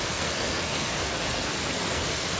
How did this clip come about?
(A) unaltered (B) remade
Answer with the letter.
B